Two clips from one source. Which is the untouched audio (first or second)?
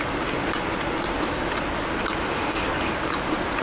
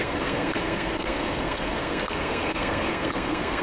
first